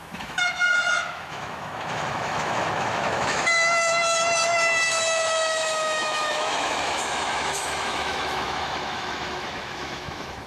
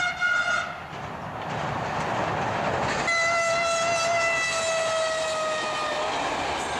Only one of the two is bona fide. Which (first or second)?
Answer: second